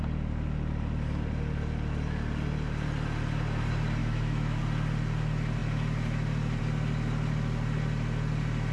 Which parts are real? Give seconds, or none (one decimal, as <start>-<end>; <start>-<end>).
0.0-4.0; 4.6-8.7